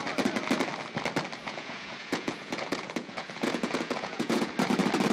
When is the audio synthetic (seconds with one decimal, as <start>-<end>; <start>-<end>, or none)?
1.4-4.5